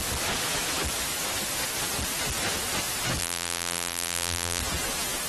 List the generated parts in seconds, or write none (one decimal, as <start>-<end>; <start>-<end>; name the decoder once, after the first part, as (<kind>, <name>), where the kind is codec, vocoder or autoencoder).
3.2-4.6 (vocoder, BigVGAN v2)